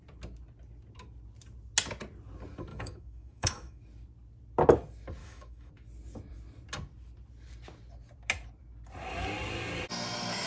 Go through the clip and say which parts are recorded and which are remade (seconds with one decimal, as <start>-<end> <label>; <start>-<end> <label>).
0.0-2.7 recorded; 2.7-3.8 remade; 3.8-5.2 recorded; 5.2-5.7 remade; 5.7-10.5 recorded